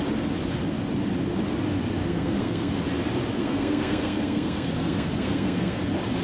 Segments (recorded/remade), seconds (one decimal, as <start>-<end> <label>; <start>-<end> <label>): 0.0-2.0 recorded; 2.0-2.7 remade; 2.7-3.4 recorded; 3.4-5.8 remade; 5.8-6.2 recorded